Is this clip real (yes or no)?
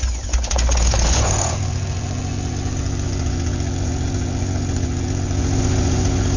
no